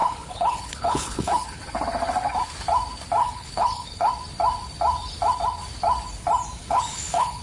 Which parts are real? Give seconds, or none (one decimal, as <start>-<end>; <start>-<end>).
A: 1.6-3.2; 4.1-6.6